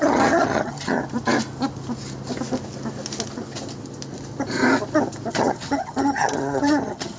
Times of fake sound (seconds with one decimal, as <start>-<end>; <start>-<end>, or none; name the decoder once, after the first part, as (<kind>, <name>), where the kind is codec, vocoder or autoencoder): 0.0-1.0 (vocoder, HiFi-GAN); 5.3-7.2